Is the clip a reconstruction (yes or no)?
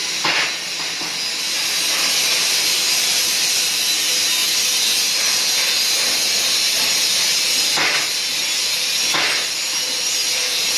no